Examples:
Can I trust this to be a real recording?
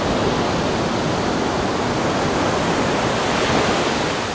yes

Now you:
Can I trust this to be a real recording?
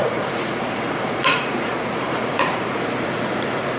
no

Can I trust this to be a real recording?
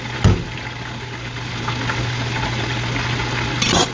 yes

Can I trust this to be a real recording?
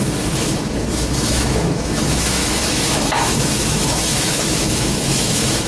no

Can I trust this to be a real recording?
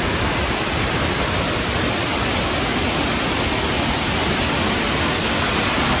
yes